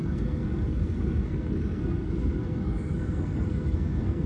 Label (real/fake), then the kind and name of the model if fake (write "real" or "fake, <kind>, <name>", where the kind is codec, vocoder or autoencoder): fake, codec, SNAC